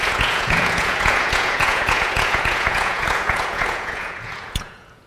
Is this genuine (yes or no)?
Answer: no